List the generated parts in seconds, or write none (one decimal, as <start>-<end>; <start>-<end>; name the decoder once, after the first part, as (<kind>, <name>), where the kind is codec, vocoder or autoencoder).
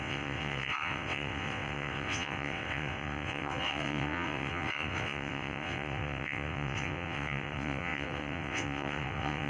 0.0-9.5 (vocoder, WaveNeXt)